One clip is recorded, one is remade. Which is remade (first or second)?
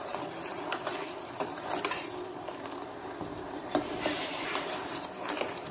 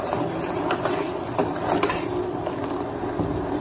first